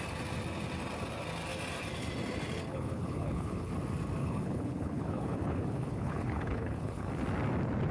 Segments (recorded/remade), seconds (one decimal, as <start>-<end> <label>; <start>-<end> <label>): 0.0-2.7 recorded; 2.7-3.7 remade; 3.7-4.2 recorded; 4.2-7.1 remade; 7.1-7.9 recorded